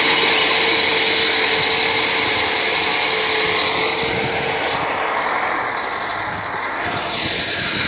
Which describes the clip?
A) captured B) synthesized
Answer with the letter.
A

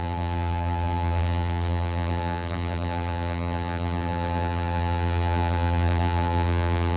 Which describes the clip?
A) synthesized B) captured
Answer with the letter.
A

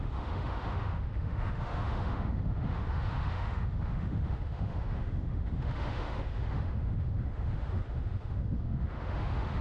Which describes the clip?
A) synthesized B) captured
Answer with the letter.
A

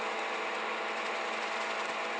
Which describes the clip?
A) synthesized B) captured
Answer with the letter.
B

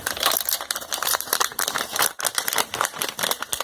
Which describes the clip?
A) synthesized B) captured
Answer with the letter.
A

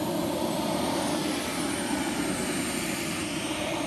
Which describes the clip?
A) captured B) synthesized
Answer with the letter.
A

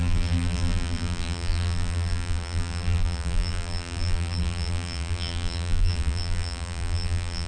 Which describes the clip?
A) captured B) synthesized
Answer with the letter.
B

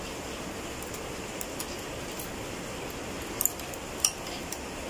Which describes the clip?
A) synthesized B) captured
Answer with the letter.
B